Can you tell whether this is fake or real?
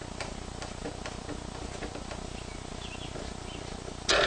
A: real